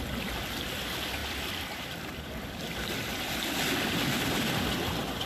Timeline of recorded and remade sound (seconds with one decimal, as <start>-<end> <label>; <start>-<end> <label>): 0.0-1.2 recorded; 1.2-3.3 remade; 3.3-5.3 recorded